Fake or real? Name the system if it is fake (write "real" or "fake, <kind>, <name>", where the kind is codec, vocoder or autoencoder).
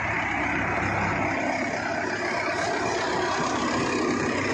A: real